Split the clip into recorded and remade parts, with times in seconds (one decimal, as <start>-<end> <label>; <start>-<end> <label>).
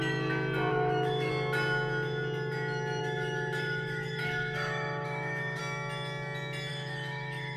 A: 0.0-0.7 recorded; 0.7-1.3 remade; 1.3-3.0 recorded; 3.0-5.6 remade; 5.6-6.7 recorded; 6.7-7.6 remade